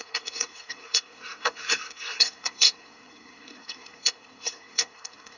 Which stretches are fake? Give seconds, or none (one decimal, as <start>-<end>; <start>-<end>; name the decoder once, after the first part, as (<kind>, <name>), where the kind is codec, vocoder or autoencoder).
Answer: 0.0-5.4 (codec, SNAC)